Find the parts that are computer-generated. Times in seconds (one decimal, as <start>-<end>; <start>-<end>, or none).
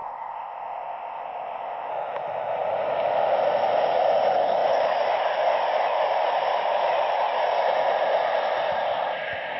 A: 0.0-1.9